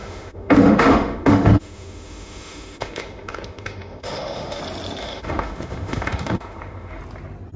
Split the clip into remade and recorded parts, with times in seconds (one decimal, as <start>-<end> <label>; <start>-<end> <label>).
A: 0.0-4.6 remade; 4.6-5.0 recorded; 5.0-7.0 remade; 7.0-7.6 recorded